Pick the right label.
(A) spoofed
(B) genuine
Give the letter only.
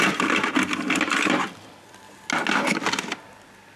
B